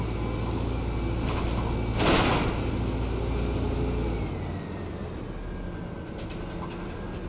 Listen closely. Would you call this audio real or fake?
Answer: real